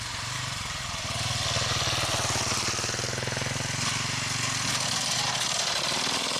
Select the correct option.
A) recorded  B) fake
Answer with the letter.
A